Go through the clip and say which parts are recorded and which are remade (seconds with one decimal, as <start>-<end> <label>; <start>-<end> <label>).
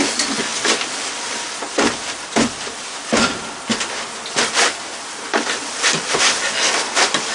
0.0-7.3 remade